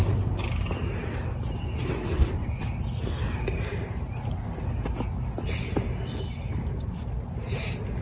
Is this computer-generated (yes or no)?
no